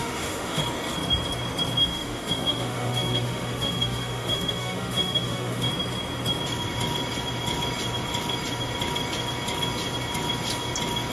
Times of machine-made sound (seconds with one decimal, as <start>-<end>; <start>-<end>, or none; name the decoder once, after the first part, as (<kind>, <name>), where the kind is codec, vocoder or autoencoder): 0.0-0.6 (autoencoder, DAC-VAE); 1.8-5.7